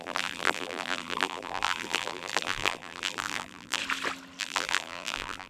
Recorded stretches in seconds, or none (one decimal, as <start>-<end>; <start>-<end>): 3.8-4.4